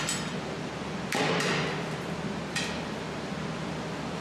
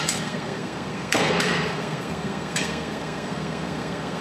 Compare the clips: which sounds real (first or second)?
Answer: first